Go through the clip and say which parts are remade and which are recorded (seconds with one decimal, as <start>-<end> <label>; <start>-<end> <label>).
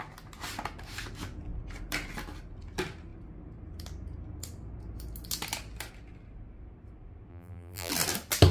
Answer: 0.0-7.3 recorded; 7.3-7.9 remade; 7.9-8.5 recorded